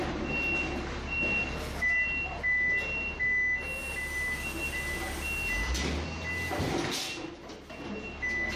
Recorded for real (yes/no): yes